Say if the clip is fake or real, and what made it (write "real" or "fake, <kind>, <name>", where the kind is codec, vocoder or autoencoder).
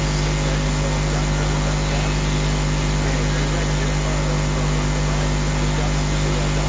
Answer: real